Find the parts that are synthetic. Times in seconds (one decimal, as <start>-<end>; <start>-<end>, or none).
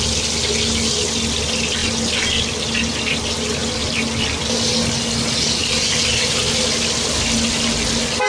none